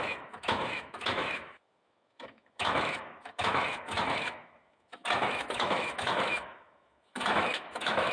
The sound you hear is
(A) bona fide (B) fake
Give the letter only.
B